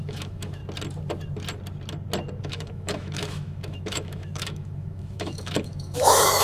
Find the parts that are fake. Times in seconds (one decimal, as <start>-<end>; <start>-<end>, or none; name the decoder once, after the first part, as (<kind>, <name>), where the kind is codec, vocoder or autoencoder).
0.0-0.6 (autoencoder, DAC-VAE); 2.4-6.4